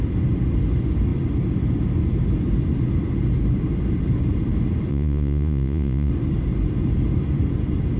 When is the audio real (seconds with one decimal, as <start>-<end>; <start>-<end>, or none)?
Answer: 0.0-4.9; 6.1-8.0